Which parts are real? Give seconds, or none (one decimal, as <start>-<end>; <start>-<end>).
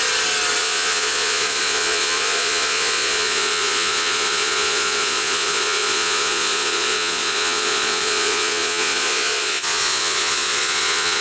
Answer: 0.0-0.6